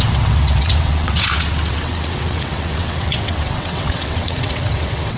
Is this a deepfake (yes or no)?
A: yes